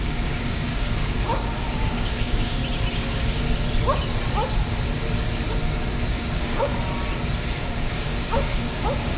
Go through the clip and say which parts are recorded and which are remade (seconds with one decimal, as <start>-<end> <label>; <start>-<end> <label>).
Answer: 0.0-2.6 remade; 2.6-6.1 recorded; 6.1-6.7 remade; 6.7-7.6 recorded; 7.6-9.2 remade